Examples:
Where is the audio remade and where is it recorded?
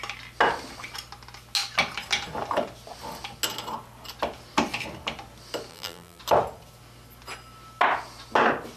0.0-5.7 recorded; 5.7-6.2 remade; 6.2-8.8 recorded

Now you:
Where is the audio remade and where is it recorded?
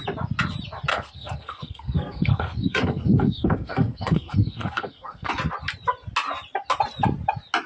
0.0-0.9 recorded; 0.9-5.3 remade; 5.3-7.7 recorded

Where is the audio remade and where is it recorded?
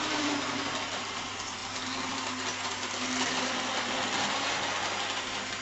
0.0-5.6 recorded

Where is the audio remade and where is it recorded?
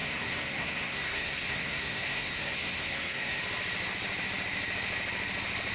0.0-3.4 remade; 3.4-5.7 recorded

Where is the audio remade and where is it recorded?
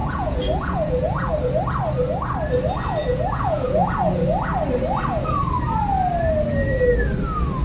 0.0-1.3 remade; 1.3-3.0 recorded; 3.0-3.9 remade; 3.9-7.6 recorded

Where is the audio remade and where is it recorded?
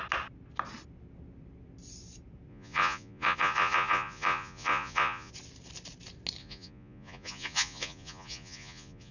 0.0-2.5 recorded; 2.5-5.3 remade; 5.3-6.4 recorded; 6.4-9.1 remade